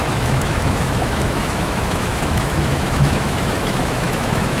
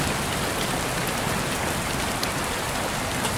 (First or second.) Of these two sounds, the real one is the second